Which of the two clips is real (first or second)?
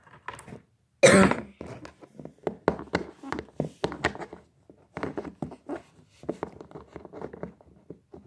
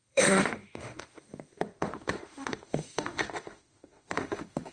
first